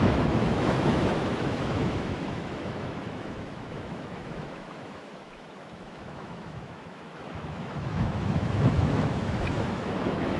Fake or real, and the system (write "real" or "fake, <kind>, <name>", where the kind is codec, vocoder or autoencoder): fake, autoencoder, DAC-VAE